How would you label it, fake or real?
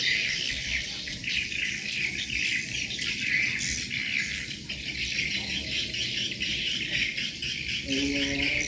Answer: real